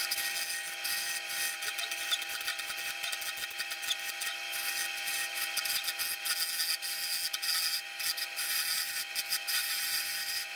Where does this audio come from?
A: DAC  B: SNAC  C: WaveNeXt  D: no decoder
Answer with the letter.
D